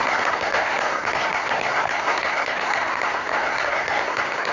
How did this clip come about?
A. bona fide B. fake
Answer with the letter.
B